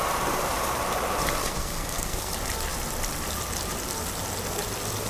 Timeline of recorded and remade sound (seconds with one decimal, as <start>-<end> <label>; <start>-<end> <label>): 0.0-1.4 recorded; 1.4-2.3 remade; 2.3-5.1 recorded